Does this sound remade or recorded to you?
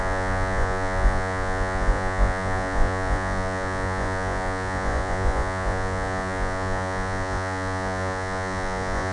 remade